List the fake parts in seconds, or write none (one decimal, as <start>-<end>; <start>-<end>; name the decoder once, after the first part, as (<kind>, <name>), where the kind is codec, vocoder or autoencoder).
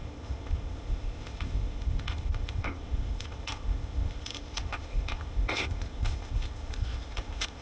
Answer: 0.0-7.6 (codec, ZipCodec)